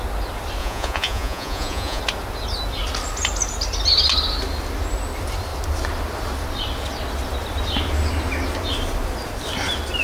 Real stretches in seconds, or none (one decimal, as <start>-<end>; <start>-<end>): 0.0-0.6; 2.0-10.0